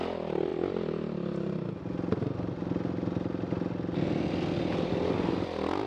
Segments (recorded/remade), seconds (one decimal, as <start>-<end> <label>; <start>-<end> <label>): 0.0-5.9 recorded